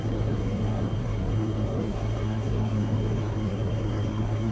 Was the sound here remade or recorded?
remade